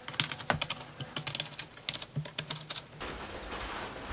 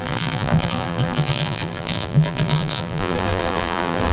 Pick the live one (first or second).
first